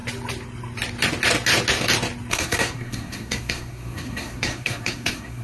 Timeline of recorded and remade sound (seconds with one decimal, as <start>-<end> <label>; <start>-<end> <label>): 0.0-2.3 recorded; 2.3-5.4 remade